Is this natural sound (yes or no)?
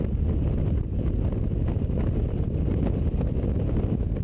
yes